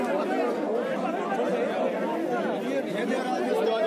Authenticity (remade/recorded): recorded